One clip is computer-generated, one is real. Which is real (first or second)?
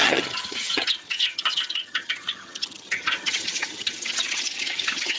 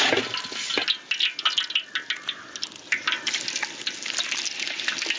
second